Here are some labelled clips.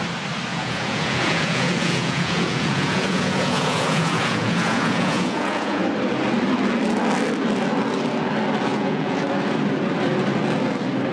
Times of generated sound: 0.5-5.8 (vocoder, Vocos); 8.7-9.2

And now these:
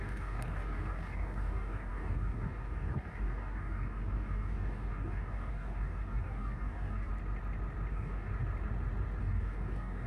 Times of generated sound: 0.0-7.1 (codec, DAC); 7.9-8.3; 9.2-10.1

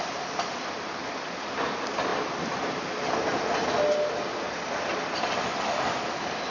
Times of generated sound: none

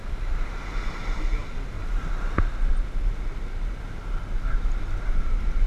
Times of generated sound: none

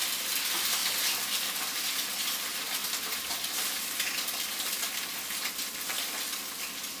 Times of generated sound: none

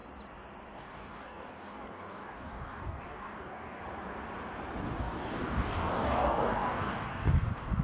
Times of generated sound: 0.7-3.8 (codec, DAC); 5.0-7.8